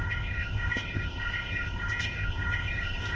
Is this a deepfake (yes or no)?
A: yes